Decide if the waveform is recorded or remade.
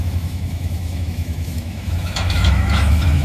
remade